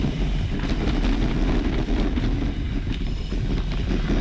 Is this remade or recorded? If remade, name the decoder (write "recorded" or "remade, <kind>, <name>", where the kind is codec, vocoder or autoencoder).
recorded